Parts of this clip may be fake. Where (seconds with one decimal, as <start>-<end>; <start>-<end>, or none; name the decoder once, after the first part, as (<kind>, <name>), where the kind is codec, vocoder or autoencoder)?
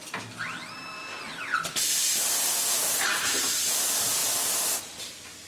1.5-2.2 (vocoder, BigVGAN v2); 4.2-4.8